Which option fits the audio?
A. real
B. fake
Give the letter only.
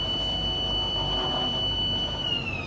A